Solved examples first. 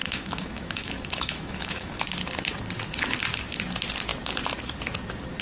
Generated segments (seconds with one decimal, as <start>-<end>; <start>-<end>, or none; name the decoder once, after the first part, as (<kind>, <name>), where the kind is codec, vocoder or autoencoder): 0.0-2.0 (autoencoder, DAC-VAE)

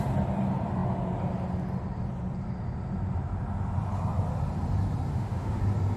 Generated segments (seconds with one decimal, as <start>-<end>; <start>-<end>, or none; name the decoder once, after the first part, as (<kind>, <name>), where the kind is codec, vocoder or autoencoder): 5.1-5.6 (autoencoder, DAC-VAE)

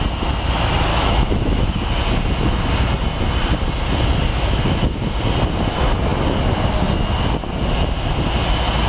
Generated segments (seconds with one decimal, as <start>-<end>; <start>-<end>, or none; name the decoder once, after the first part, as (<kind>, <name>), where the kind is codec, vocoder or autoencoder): 0.9-1.9 (autoencoder, DAC-VAE); 4.3-5.0

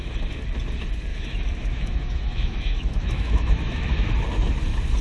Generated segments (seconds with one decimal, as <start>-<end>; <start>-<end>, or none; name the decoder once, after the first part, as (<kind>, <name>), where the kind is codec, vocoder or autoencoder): 1.1-4.1 (autoencoder, DAC-VAE)

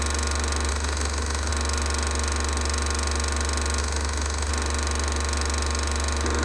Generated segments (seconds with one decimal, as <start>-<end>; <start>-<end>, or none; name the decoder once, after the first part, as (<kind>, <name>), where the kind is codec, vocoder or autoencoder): 0.7-1.5 (autoencoder, DAC-VAE); 3.8-4.5

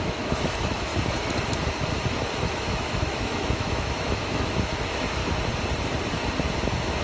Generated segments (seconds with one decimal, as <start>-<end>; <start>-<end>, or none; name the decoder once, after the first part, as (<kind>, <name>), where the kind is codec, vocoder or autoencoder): 0.0-0.9 (autoencoder, DAC-VAE); 2.5-5.2

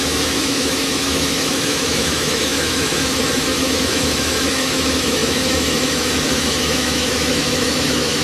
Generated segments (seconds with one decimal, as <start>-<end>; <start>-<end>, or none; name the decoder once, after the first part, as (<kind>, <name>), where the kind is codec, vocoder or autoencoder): 0.0-8.2 (autoencoder, DAC-VAE)